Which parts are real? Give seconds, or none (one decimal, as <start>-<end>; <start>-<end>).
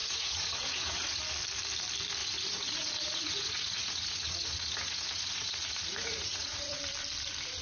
1.2-2.2; 6.8-7.6